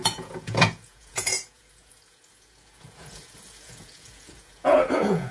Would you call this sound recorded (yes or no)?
no